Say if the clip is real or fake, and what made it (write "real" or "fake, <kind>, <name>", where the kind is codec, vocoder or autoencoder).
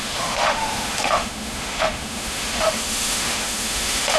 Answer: fake, autoencoder, DAC-VAE